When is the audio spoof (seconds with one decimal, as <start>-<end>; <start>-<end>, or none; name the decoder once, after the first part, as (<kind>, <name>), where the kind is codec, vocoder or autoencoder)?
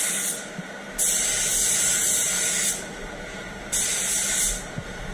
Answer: none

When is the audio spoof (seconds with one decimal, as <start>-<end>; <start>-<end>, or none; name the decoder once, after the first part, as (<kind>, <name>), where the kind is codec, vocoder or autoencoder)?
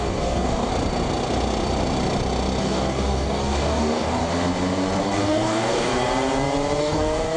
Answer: 0.0-0.7 (codec, DAC); 2.6-4.2; 5.0-5.9; 6.8-7.4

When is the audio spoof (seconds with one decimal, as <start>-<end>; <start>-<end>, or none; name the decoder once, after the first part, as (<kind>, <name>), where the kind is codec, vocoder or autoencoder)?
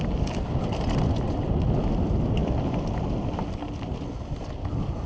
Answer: none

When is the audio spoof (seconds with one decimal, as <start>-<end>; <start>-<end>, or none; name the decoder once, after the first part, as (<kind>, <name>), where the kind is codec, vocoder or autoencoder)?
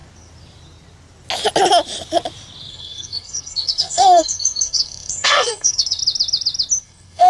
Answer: 2.7-6.0 (codec, SNAC); 6.8-7.3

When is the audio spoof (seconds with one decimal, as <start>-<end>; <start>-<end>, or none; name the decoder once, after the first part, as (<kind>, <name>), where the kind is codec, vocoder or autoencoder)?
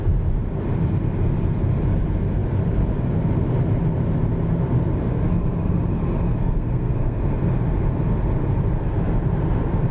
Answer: 6.4-7.2 (codec, SNAC)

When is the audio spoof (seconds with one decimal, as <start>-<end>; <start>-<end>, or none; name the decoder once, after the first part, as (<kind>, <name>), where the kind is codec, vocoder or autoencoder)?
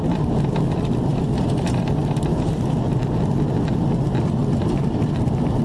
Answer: 2.3-3.3 (vocoder, BigVGAN v2); 4.4-5.6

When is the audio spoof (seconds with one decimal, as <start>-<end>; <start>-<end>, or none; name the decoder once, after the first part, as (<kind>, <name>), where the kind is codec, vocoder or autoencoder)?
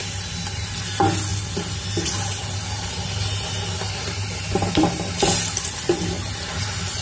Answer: none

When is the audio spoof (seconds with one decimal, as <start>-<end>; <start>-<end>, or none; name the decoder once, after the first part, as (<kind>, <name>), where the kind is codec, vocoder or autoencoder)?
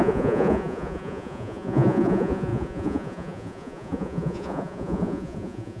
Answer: 0.0-5.8 (vocoder, Vocos)